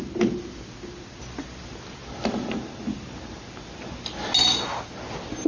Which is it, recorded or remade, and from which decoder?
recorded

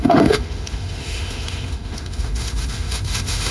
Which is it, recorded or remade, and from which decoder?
remade, autoencoder, DAC-VAE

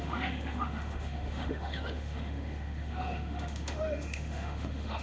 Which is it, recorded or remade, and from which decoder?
remade, autoencoder, DAC-VAE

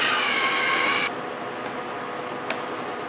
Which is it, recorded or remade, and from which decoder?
recorded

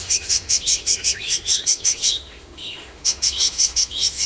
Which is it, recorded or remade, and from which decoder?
remade, autoencoder, DAC-VAE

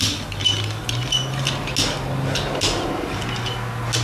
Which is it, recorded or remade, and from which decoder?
recorded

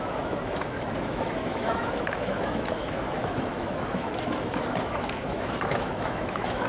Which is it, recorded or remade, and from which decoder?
remade, autoencoder, DAC-VAE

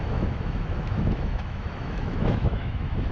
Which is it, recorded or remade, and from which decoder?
remade, autoencoder, DAC-VAE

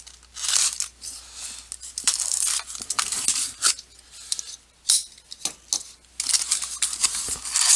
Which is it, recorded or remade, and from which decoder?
recorded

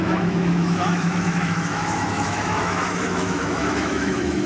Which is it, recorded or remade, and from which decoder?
remade, autoencoder, DAC-VAE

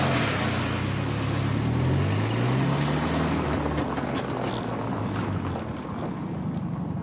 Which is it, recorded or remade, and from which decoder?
recorded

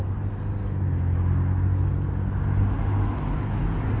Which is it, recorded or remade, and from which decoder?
recorded